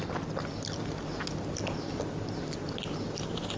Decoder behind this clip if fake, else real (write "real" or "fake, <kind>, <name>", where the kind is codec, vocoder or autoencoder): real